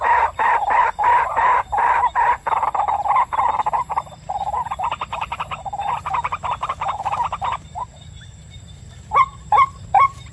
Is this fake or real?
fake